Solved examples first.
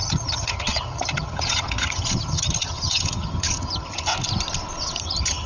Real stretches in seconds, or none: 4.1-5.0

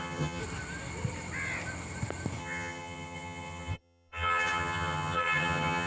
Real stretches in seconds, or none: 0.4-2.4

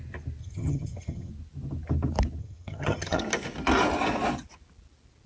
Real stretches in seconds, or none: 0.0-0.4; 1.3-2.4; 3.2-5.3